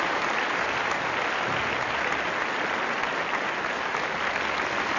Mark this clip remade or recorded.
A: recorded